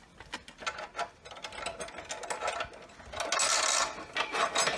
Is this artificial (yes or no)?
no